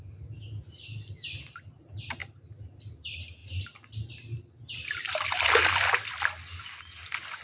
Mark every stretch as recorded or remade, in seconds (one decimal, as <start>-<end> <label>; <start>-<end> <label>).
0.0-7.4 recorded